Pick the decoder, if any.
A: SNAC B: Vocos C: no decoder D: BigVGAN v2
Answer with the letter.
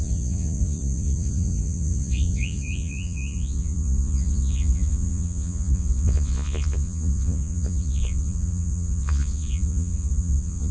B